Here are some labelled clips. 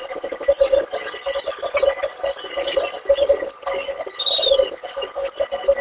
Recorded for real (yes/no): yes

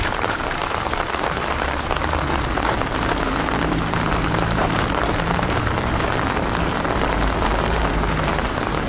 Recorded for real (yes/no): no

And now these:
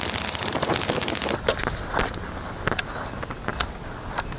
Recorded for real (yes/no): yes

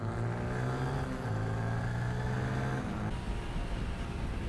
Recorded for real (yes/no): yes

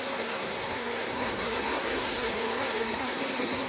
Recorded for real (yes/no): no